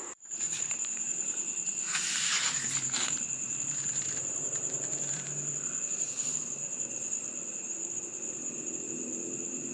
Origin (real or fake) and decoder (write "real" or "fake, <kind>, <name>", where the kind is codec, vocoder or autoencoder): fake, vocoder, BigVGAN v2